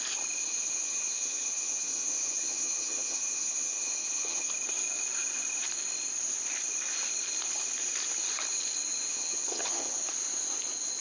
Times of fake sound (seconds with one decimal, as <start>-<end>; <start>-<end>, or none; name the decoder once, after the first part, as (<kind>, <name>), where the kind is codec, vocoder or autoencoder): 0.4-4.5 (vocoder, HiFi-GAN); 9.1-10.0